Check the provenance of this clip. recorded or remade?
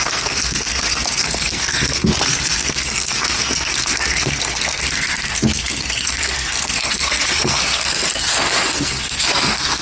remade